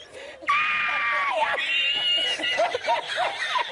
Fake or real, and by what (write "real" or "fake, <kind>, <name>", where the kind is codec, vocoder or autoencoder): real